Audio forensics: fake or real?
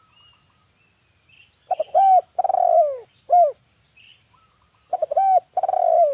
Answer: real